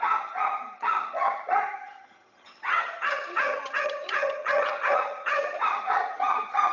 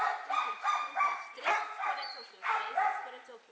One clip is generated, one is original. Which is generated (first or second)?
first